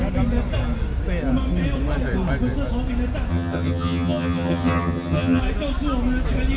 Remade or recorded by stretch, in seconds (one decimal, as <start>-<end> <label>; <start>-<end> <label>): 0.0-3.3 recorded; 3.3-5.4 remade; 5.4-6.6 recorded